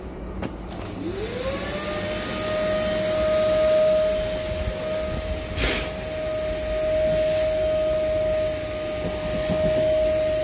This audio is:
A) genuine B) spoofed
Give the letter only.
A